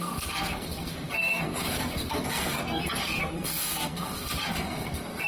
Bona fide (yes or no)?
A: no